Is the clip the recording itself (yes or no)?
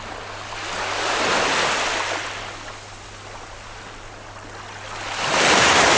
yes